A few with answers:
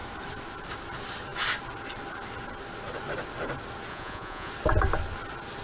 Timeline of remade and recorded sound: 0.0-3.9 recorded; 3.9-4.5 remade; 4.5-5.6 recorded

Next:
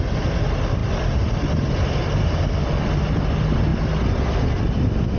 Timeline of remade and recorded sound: 0.0-5.2 recorded

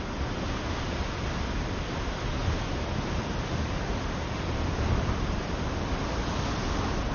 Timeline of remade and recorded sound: 0.0-7.1 recorded

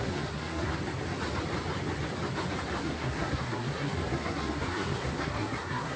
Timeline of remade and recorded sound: 0.0-0.7 remade; 0.7-2.8 recorded; 2.8-6.0 remade

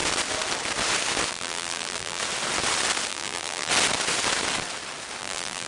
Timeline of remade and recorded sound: 0.0-1.3 recorded; 1.3-2.2 remade; 2.2-3.1 recorded; 3.1-3.7 remade; 3.7-5.2 recorded; 5.2-5.7 remade

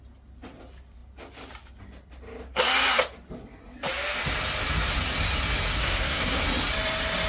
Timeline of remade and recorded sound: 0.0-5.8 recorded; 5.8-6.4 remade; 6.4-7.3 recorded